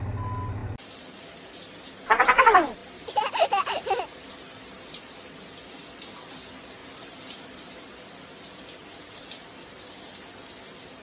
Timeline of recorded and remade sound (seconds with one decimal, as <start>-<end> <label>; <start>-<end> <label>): 0.0-2.8 recorded; 2.8-5.2 remade; 5.2-6.8 recorded; 6.8-7.8 remade; 7.8-11.0 recorded